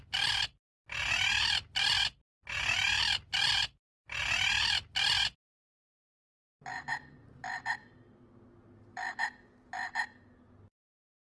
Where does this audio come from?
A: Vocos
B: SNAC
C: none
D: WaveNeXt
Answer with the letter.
C